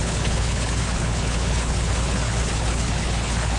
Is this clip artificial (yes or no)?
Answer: yes